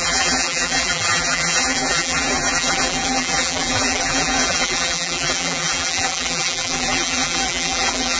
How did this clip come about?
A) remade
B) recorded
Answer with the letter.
A